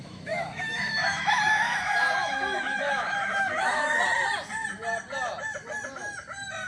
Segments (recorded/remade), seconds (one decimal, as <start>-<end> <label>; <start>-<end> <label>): 0.0-4.0 remade; 4.0-6.7 recorded

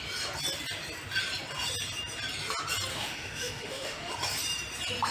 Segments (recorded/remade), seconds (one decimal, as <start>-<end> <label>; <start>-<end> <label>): 0.0-2.9 recorded; 2.9-4.1 remade; 4.1-5.1 recorded

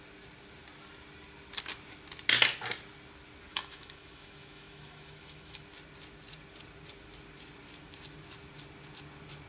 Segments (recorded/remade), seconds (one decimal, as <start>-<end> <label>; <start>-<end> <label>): 0.0-3.5 recorded; 3.5-5.6 remade; 5.6-9.5 recorded

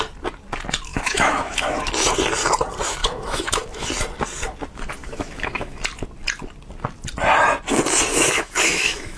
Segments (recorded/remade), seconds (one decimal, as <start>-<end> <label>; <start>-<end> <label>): 0.0-0.9 recorded; 0.9-1.9 remade; 1.9-3.0 recorded; 3.0-3.9 remade; 3.9-5.0 recorded; 5.0-5.8 remade; 5.8-8.1 recorded; 8.1-9.2 remade

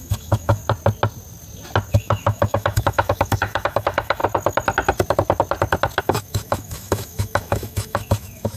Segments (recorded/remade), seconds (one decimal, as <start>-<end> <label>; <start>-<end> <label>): 0.0-0.6 remade; 0.6-1.9 recorded; 1.9-4.2 remade; 4.2-6.0 recorded; 6.0-8.6 remade

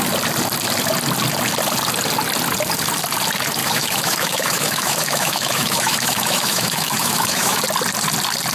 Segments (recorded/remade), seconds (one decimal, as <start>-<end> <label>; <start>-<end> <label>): 0.0-3.6 recorded; 3.6-7.6 remade; 7.6-8.5 recorded